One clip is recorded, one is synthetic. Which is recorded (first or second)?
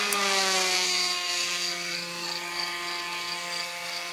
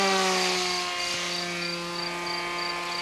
second